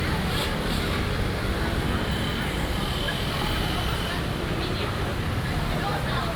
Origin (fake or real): real